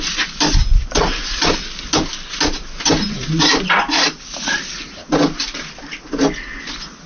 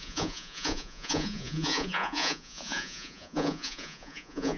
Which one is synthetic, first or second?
second